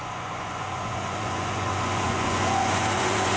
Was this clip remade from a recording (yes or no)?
yes